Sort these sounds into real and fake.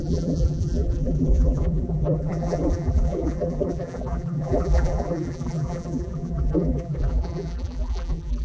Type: fake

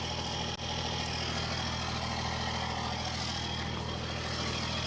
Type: real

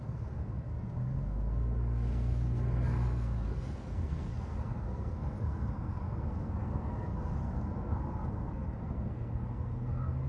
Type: fake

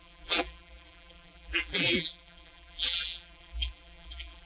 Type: fake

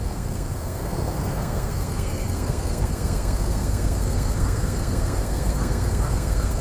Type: fake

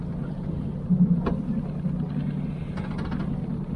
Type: real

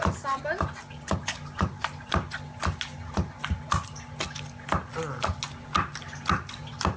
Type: real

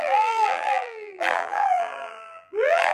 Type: fake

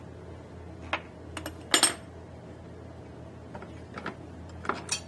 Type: real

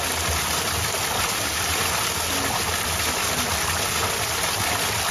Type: real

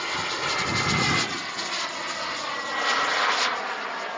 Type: real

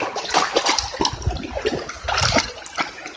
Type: real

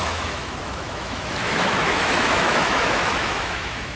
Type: fake